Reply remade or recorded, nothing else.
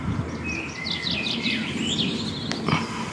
recorded